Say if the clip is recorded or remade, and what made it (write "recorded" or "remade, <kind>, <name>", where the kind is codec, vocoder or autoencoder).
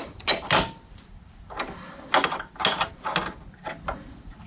recorded